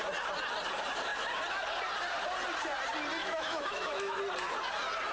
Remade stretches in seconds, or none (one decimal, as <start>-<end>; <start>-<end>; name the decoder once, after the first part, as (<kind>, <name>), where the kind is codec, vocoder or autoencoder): 3.2-4.2 (autoencoder, DAC-VAE)